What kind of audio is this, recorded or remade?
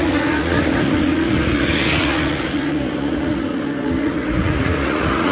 remade